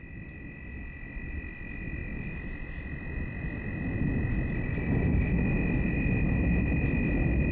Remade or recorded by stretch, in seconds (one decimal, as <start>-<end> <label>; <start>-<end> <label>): 0.0-2.0 recorded; 2.0-3.0 remade; 3.0-7.5 recorded